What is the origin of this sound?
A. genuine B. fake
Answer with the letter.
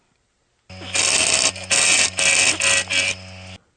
A